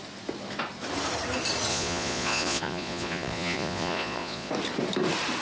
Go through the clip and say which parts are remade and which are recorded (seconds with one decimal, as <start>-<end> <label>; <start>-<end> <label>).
0.0-1.7 recorded; 1.7-4.5 remade; 4.5-5.4 recorded